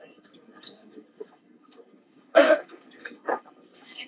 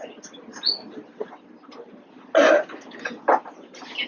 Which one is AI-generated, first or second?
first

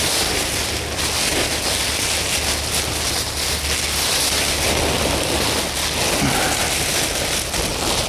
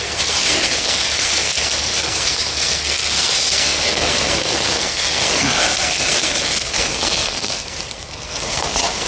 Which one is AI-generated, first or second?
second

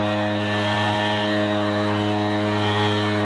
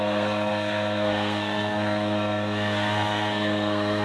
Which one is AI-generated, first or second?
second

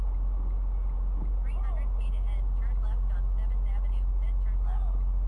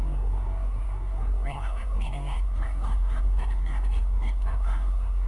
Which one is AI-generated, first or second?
second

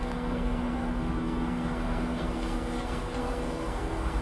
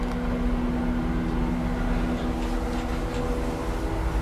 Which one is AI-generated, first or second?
first